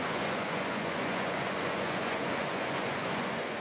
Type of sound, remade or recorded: remade